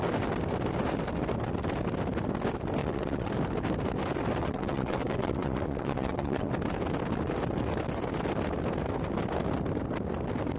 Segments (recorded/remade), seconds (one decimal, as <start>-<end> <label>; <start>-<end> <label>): 0.0-2.8 recorded; 2.8-3.3 remade; 3.3-4.4 recorded; 4.4-6.5 remade; 6.5-10.6 recorded